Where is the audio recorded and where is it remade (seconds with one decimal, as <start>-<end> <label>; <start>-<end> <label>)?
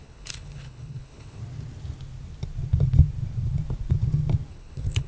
0.0-1.4 remade; 1.4-4.5 recorded; 4.5-5.1 remade